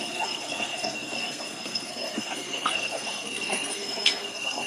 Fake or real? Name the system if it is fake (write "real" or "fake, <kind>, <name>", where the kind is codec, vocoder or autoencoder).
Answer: fake, codec, SNAC